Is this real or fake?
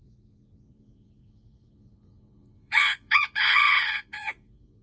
fake